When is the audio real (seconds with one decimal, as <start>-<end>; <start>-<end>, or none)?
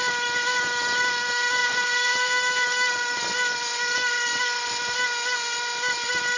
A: 0.0-1.6; 3.2-6.4